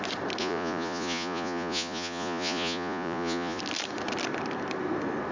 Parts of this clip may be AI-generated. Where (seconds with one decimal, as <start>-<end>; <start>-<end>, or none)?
0.4-3.6